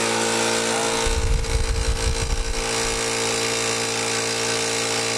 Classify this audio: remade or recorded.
recorded